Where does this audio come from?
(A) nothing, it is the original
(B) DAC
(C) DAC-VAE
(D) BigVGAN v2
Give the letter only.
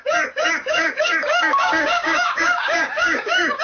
B